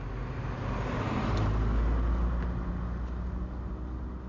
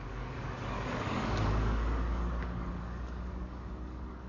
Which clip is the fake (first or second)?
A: second